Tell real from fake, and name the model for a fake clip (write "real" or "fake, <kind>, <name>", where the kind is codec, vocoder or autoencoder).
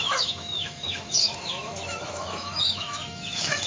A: fake, autoencoder, DAC-VAE